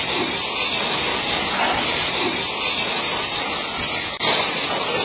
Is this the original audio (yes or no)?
yes